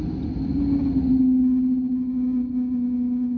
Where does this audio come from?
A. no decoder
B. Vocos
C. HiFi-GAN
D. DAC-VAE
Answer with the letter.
A